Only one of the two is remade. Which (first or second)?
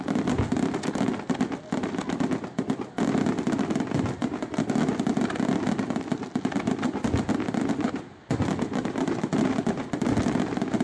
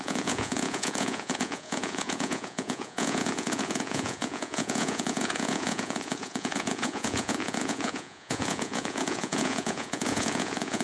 second